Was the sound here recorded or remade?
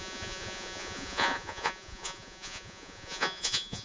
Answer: remade